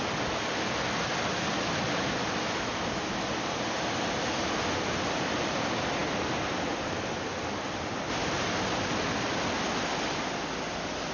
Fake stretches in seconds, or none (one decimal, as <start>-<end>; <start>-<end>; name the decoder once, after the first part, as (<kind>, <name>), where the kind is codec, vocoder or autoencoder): none